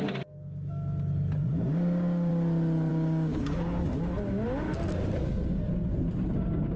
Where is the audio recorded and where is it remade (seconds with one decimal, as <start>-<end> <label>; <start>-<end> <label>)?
0.0-1.4 recorded; 1.4-2.3 remade; 2.3-2.9 recorded; 2.9-3.9 remade; 3.9-6.8 recorded